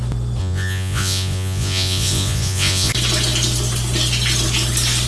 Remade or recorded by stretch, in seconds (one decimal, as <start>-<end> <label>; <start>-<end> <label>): 0.0-0.4 recorded; 0.4-2.9 remade; 2.9-5.1 recorded

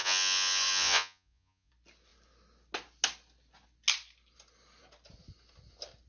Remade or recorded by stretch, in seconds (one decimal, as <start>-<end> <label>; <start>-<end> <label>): 0.0-1.7 remade; 1.7-6.1 recorded

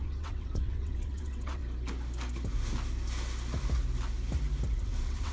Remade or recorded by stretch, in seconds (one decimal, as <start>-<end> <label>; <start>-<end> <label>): 0.0-1.6 remade; 1.6-4.8 recorded; 4.8-5.3 remade